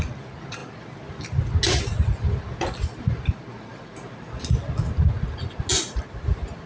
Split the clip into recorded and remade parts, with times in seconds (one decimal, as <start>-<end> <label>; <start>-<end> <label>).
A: 0.0-6.7 recorded